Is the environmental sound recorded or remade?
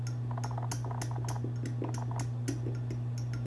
recorded